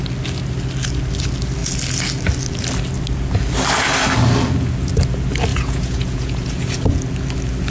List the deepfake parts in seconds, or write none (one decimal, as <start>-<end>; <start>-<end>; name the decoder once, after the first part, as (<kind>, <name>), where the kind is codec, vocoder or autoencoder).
5.5-6.7 (vocoder, Vocos)